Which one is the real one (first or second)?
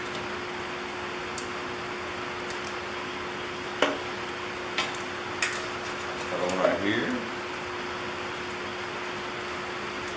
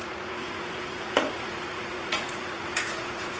first